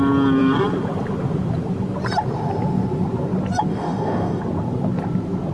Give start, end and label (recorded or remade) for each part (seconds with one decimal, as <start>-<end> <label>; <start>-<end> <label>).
0.0-3.7 recorded; 3.7-4.4 remade; 4.4-5.5 recorded